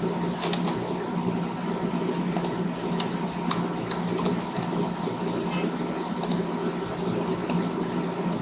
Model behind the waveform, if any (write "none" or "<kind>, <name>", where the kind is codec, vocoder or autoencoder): none